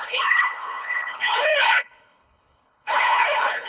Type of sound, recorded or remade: remade